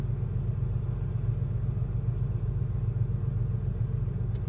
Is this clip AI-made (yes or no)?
no